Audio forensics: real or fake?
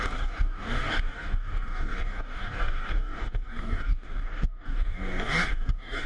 fake